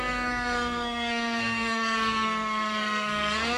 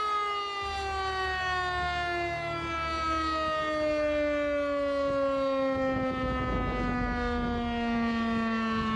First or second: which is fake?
first